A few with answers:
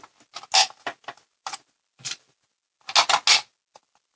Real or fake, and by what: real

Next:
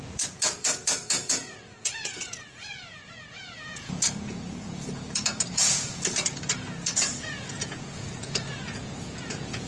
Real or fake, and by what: fake, vocoder, Vocos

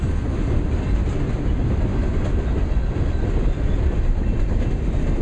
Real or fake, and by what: real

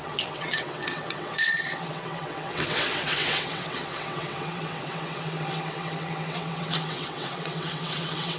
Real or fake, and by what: fake, vocoder, WaveNeXt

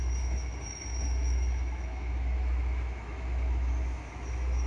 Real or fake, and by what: fake, autoencoder, DAC-VAE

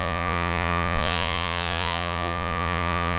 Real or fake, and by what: fake, vocoder, Vocos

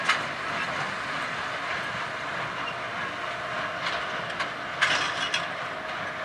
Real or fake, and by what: real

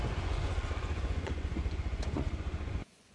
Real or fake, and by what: fake, vocoder, Vocos